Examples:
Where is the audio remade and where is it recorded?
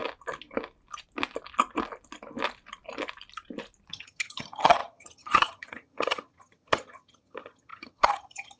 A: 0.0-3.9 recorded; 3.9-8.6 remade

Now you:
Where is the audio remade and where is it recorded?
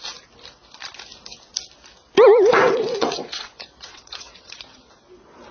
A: 0.0-2.5 recorded; 2.5-4.9 remade; 4.9-5.5 recorded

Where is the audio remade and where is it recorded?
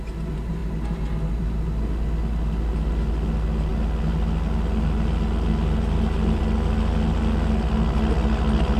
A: 0.0-8.8 recorded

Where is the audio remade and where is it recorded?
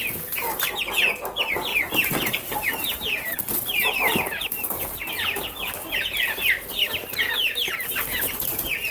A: 0.0-1.7 recorded; 1.7-5.1 remade; 5.1-7.0 recorded; 7.0-7.7 remade; 7.7-8.9 recorded